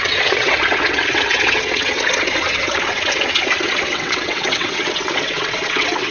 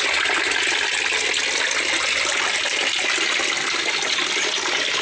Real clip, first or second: second